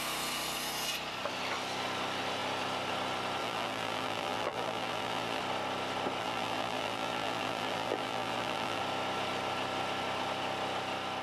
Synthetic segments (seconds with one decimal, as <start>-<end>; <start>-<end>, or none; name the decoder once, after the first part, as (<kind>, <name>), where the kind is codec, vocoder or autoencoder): 3.4-5.4 (vocoder, BigVGAN v2); 6.2-8.8